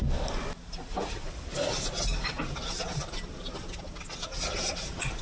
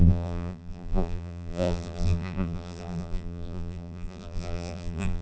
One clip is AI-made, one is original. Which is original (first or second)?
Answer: first